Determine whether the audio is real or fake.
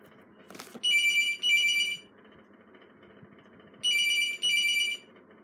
real